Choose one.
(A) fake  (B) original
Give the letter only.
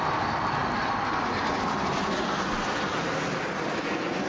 B